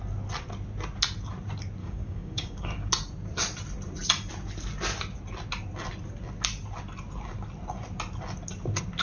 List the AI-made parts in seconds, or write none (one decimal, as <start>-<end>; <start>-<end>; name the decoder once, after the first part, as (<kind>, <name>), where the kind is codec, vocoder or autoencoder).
1.8-2.9 (codec, DAC)